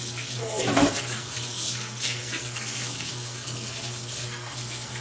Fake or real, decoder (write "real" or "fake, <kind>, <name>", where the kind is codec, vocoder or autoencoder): fake, codec, SNAC